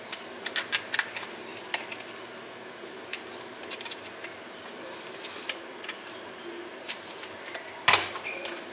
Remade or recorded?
recorded